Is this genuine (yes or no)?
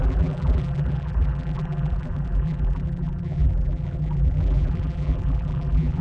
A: no